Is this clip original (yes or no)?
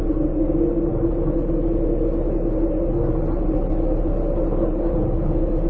yes